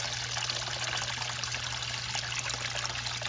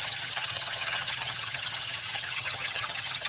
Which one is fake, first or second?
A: second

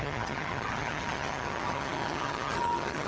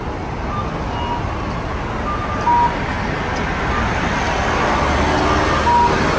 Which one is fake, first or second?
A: first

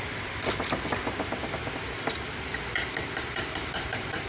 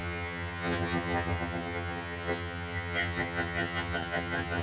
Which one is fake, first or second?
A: second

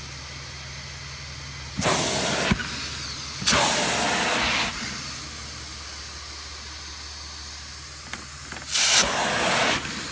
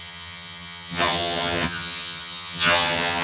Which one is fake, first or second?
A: second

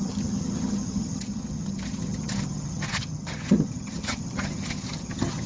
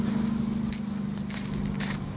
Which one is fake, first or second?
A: first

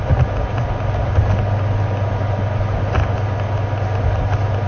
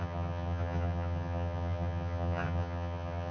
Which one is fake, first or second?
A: second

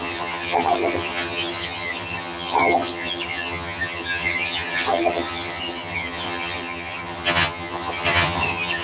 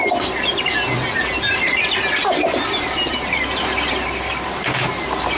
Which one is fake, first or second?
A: first